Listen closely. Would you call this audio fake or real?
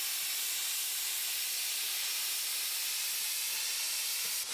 real